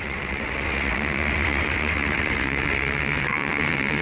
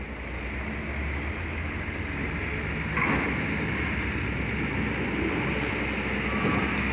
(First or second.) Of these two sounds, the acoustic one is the second